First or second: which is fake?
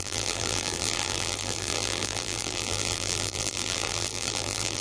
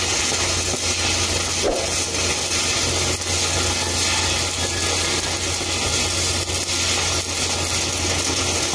first